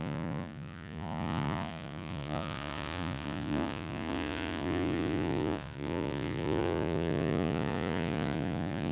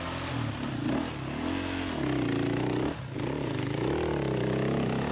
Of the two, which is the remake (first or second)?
first